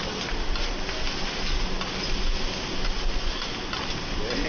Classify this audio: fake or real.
real